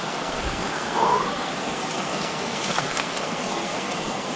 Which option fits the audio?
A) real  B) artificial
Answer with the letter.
B